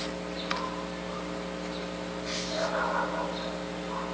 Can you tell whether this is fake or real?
real